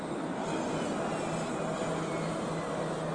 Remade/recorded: recorded